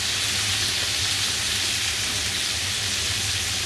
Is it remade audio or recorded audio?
recorded